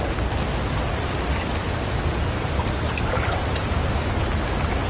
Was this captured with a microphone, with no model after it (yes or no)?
yes